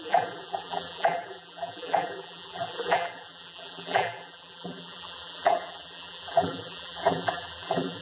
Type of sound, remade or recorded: remade